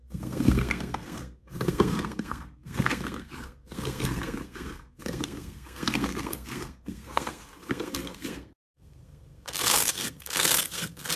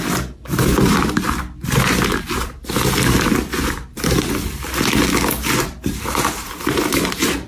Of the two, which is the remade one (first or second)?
first